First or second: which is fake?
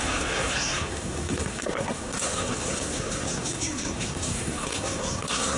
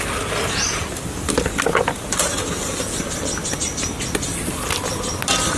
first